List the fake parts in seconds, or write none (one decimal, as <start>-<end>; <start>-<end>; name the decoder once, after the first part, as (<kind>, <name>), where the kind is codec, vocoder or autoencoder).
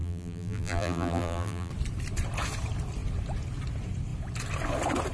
0.0-1.7 (vocoder, BigVGAN v2)